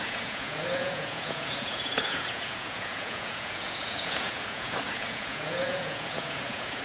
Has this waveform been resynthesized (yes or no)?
yes